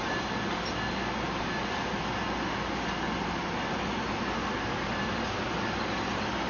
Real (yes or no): yes